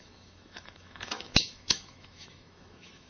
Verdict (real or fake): fake